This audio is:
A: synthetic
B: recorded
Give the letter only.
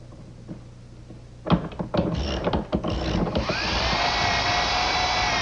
B